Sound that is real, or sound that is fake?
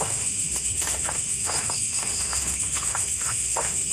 fake